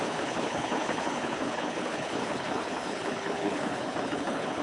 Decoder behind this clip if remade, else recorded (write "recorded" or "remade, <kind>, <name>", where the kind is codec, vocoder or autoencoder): remade, codec, HILCodec